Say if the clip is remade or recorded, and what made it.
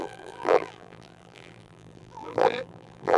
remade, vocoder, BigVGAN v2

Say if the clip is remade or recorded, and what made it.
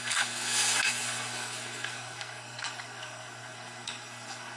remade, codec, SNAC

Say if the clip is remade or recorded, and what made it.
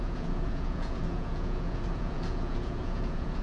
remade, vocoder, Vocos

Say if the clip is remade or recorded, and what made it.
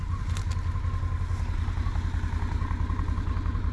recorded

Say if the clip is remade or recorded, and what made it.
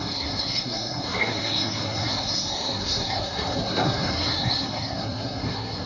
remade, codec, SNAC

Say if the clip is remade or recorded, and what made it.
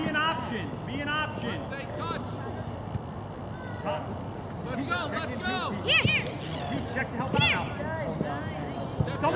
recorded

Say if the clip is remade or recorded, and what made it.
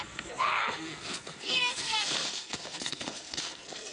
remade, codec, SNAC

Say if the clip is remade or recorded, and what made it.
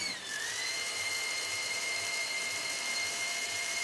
remade, vocoder, BigVGAN v2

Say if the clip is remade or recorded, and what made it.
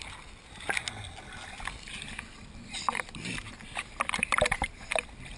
recorded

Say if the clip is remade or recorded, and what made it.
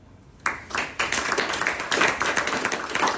recorded